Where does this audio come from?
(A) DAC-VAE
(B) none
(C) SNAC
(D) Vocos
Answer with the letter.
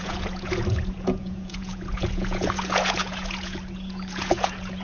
D